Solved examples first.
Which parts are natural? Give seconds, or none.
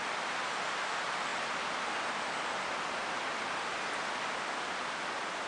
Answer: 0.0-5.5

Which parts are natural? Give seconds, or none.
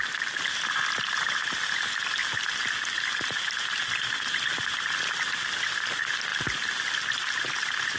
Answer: 0.0-8.0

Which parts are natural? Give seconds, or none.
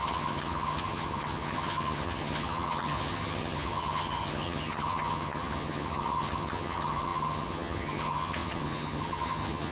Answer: none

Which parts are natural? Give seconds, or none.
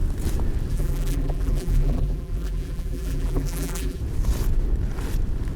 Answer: 0.0-0.7; 4.0-5.6